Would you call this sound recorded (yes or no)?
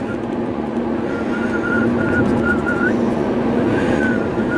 no